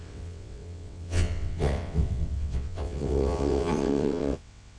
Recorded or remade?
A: remade